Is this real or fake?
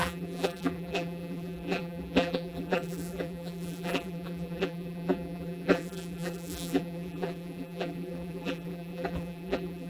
fake